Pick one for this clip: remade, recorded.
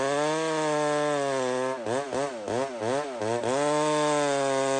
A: recorded